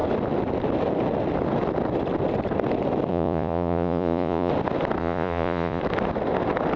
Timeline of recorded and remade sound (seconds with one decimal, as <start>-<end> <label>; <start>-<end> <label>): 0.0-3.1 recorded; 3.1-4.5 remade; 4.5-5.0 recorded; 5.0-5.8 remade; 5.8-6.8 recorded

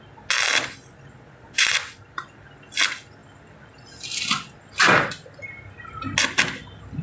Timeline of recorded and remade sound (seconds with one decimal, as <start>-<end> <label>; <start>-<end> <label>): 0.0-1.1 recorded; 1.1-1.6 remade; 1.6-7.0 recorded

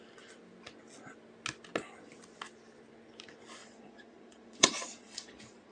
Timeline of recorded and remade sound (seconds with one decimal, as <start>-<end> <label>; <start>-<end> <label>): 0.0-3.6 recorded; 3.6-5.7 remade